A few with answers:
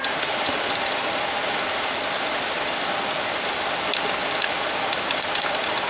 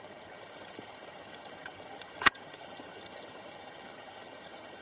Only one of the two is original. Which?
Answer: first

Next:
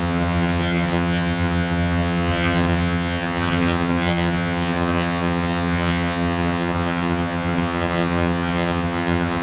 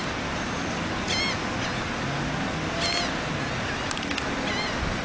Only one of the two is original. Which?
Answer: second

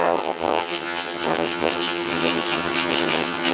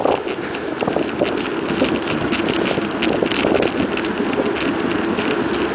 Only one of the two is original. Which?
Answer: second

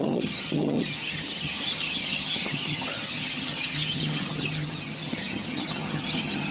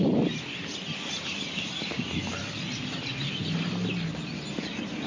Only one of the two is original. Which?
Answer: second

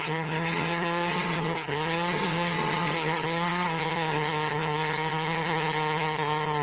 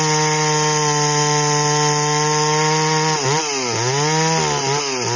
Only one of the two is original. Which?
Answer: second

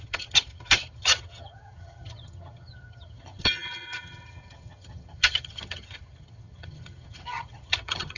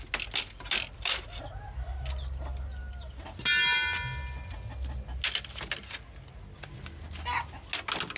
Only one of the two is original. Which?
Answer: second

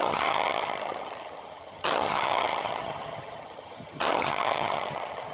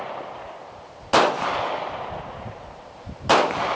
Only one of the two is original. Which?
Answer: second